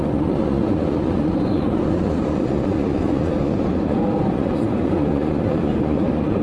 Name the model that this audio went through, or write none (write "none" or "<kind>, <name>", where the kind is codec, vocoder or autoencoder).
vocoder, Vocos